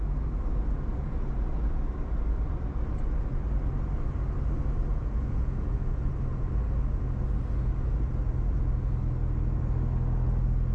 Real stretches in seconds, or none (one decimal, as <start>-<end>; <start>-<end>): 0.0-4.9; 6.1-10.7